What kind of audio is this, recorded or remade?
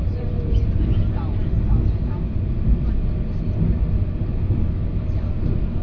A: recorded